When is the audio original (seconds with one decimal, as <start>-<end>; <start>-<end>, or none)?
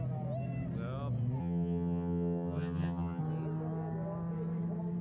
0.0-1.4; 3.2-5.0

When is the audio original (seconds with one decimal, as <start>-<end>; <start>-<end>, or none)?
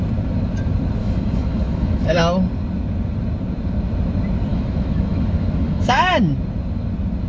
0.0-1.0; 2.2-4.5; 6.1-7.3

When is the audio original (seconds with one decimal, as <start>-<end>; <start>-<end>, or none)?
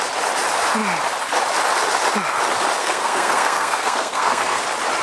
0.0-2.8; 4.6-5.0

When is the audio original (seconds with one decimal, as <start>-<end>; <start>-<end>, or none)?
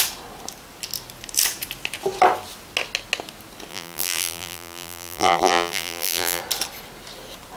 0.0-3.7; 6.4-7.6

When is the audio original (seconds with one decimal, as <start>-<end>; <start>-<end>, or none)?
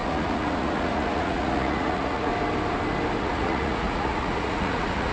2.3-3.2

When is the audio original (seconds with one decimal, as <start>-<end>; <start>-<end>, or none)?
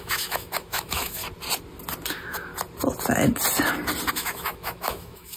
1.2-2.1; 2.5-4.1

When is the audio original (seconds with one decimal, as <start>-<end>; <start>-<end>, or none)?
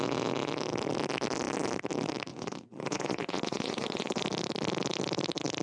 0.0-2.3; 4.2-5.6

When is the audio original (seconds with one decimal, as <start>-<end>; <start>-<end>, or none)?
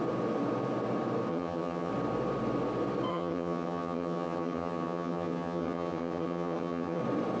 0.0-1.3; 1.9-3.1; 7.0-7.4